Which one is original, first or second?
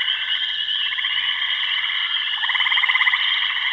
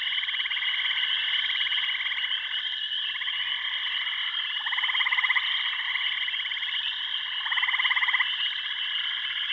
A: second